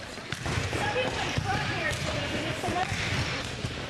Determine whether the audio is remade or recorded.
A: remade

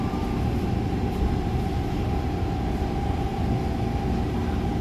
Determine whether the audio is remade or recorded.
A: recorded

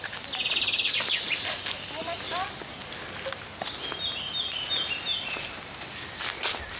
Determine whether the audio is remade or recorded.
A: recorded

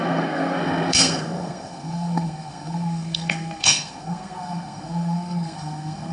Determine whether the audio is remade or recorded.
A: remade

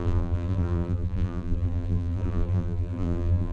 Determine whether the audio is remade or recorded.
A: remade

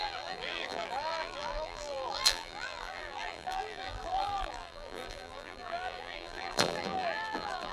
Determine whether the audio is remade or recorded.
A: remade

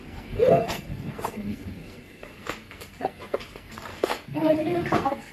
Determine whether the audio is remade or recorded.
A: remade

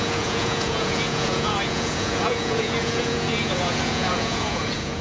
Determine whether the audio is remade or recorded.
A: remade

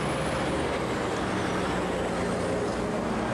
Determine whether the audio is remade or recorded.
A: recorded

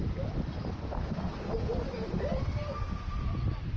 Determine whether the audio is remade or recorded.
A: recorded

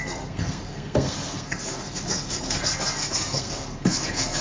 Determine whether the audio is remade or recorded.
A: remade